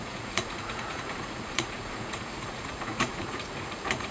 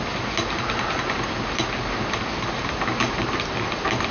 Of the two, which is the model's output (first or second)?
first